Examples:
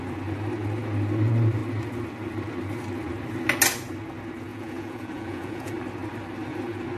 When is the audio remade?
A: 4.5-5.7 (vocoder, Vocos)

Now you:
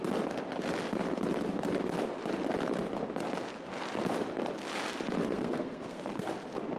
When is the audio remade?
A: 5.2-6.3 (codec, SNAC)

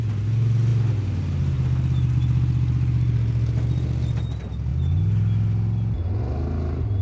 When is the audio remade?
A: none

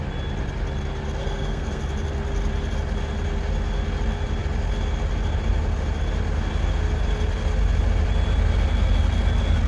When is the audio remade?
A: 1.2-1.8 (codec, SNAC)

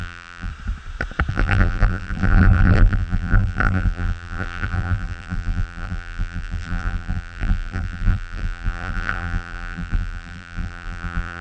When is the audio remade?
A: 0.0-0.5 (vocoder, BigVGAN v2); 1.3-11.4

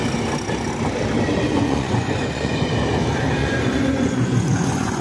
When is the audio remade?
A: 1.5-2.7 (vocoder, Vocos); 3.4-5.0

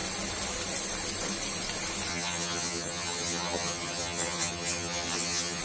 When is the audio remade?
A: 2.1-5.6 (vocoder, HiFi-GAN)